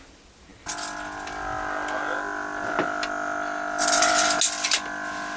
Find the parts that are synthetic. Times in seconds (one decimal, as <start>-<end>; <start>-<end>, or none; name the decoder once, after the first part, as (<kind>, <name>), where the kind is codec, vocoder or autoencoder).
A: 3.8-4.4 (vocoder, BigVGAN v2)